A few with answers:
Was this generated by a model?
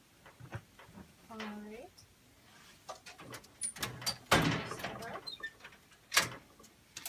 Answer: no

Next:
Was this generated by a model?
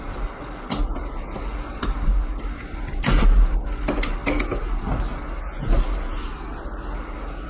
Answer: no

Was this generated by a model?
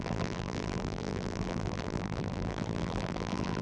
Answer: yes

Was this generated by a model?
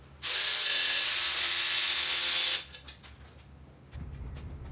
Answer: no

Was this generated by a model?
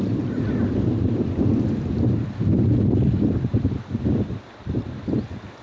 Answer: yes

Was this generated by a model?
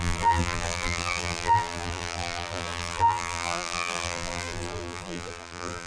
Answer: yes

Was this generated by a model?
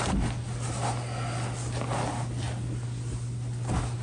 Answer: no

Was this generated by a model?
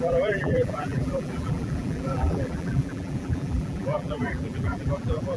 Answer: yes